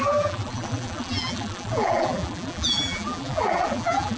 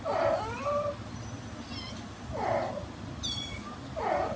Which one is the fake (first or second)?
first